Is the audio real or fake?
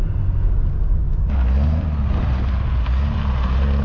real